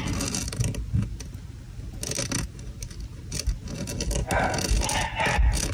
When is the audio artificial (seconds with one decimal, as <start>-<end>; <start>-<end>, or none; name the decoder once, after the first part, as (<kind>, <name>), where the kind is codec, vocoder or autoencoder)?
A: none